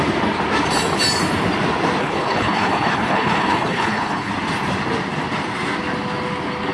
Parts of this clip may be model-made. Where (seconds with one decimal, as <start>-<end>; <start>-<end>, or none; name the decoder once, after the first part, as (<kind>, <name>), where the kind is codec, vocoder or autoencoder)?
2.0-4.3 (codec, HILCodec)